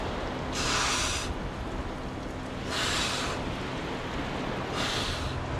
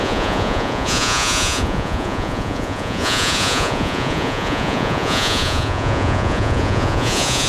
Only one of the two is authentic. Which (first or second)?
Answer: first